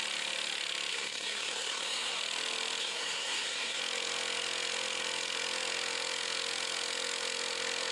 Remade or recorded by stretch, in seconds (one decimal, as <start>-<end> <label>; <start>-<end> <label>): 0.0-0.9 recorded; 0.9-2.2 remade; 2.2-2.8 recorded; 2.8-3.8 remade; 3.8-7.9 recorded